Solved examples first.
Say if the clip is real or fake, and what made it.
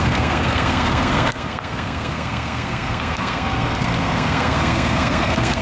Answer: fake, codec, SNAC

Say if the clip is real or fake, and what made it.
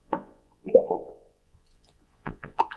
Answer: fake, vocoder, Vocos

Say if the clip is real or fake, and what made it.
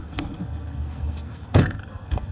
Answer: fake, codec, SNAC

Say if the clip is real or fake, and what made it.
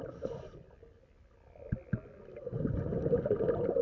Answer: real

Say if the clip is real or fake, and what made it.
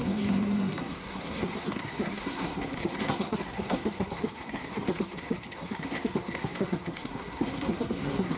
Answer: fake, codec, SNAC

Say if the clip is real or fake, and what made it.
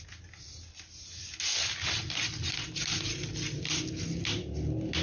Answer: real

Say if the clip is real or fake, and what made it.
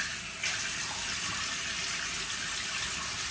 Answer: real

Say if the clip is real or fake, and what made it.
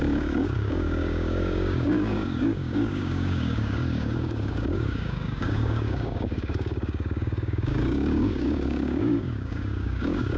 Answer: fake, codec, DAC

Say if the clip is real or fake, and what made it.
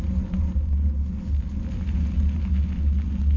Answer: real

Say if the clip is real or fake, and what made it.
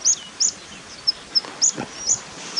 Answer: real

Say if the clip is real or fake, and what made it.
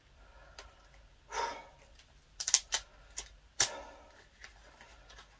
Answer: real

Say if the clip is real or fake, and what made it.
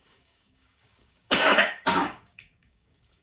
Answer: fake, codec, DAC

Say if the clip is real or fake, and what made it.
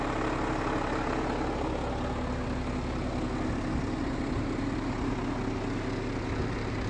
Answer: real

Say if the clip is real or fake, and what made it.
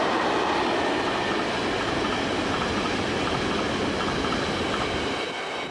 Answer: real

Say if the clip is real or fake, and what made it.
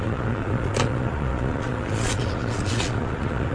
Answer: fake, vocoder, Vocos